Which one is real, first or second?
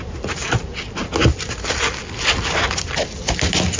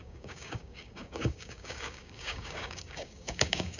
first